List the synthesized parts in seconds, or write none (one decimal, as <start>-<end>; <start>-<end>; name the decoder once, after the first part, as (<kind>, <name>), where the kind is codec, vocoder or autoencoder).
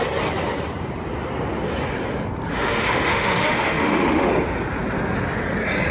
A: 2.5-4.3 (autoencoder, DAC-VAE)